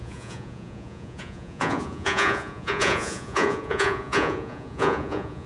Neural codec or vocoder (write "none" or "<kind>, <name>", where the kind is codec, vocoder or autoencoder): vocoder, Vocos